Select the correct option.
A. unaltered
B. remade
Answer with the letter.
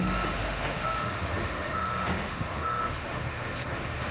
B